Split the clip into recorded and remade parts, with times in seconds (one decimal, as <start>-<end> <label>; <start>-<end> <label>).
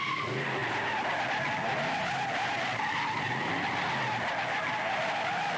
0.0-5.6 recorded